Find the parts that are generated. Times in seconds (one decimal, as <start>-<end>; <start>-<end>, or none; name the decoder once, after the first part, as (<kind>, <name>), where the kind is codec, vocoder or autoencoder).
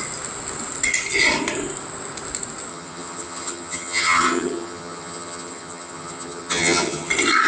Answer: 2.7-7.1 (vocoder, HiFi-GAN)